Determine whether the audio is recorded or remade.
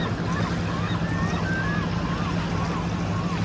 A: recorded